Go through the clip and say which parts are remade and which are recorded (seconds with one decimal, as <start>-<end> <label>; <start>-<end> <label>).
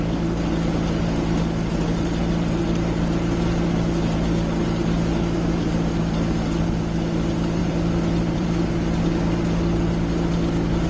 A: 0.0-7.6 recorded; 7.6-8.7 remade; 8.7-10.9 recorded